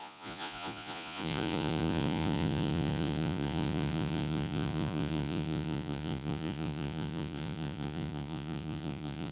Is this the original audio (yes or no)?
no